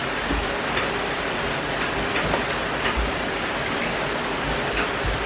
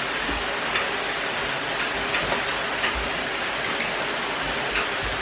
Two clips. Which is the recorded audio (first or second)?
second